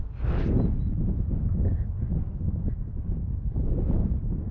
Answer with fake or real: real